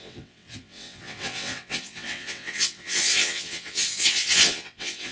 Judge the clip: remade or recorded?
remade